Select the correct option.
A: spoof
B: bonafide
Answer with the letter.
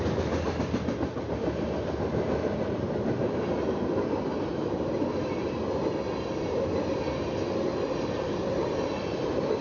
B